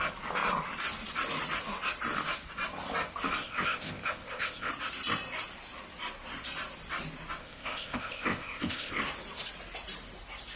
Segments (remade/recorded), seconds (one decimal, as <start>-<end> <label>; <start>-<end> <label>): 0.0-3.4 recorded; 3.4-4.7 remade; 4.7-7.4 recorded; 7.4-9.0 remade; 9.0-10.6 recorded